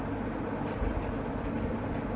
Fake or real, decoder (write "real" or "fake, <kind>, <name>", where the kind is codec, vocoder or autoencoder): real